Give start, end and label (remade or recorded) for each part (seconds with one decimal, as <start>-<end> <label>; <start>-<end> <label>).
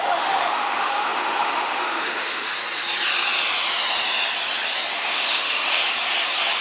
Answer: 0.0-2.5 remade; 2.5-4.9 recorded; 4.9-5.8 remade; 5.8-6.6 recorded